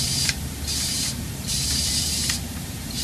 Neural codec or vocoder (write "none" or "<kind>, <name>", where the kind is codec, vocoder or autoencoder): vocoder, BigVGAN v2